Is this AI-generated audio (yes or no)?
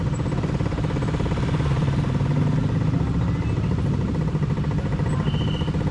no